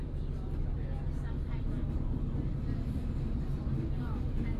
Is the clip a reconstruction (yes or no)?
no